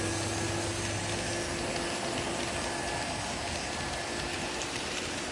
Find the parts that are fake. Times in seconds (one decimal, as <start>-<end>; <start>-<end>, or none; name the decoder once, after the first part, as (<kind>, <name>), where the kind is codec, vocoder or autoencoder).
4.3-5.3 (vocoder, BigVGAN v2)